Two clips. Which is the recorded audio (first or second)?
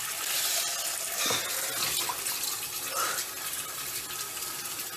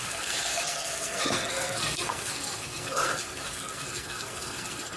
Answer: first